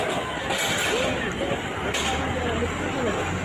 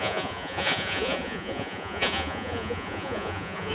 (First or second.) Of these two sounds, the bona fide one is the first